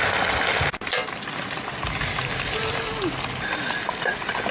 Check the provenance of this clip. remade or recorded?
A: recorded